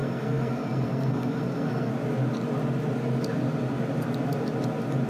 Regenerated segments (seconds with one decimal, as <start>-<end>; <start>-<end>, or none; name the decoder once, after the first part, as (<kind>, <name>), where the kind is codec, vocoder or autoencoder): 0.0-1.9 (codec, SNAC)